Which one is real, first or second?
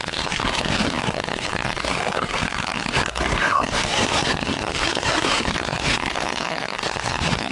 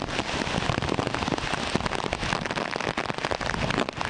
second